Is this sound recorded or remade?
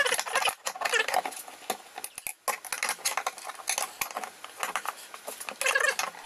recorded